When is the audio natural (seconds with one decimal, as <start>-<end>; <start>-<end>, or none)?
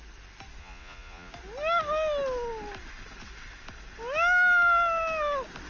0.0-0.6; 1.3-5.7